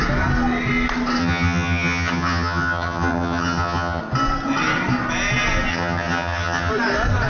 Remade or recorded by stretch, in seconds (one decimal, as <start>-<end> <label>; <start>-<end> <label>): 0.0-1.2 recorded; 1.2-4.0 remade; 4.0-5.7 recorded; 5.7-6.7 remade; 6.7-7.3 recorded